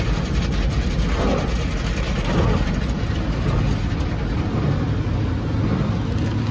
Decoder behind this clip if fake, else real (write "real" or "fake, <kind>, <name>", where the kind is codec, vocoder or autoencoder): real